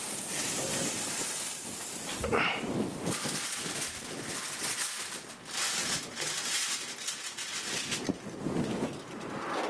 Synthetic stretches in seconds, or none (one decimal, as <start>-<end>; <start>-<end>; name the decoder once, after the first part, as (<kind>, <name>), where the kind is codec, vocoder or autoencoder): 0.0-2.6 (vocoder, BigVGAN v2)